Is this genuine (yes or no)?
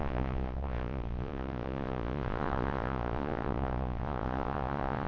no